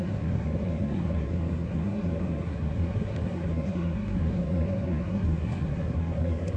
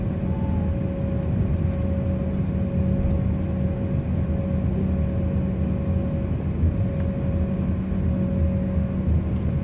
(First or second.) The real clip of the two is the second